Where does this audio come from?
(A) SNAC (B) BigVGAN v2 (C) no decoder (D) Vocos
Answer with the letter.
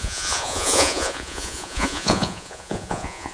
D